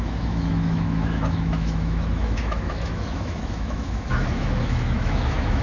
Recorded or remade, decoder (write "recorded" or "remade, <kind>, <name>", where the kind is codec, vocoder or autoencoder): remade, autoencoder, DAC-VAE